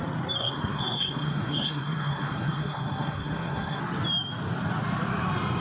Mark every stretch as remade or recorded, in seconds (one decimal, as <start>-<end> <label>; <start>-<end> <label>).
0.0-0.4 recorded; 0.4-3.8 remade; 3.8-5.6 recorded